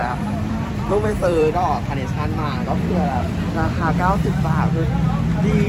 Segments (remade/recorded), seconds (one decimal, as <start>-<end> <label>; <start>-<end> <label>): 0.0-4.8 remade; 4.8-5.3 recorded; 5.3-5.7 remade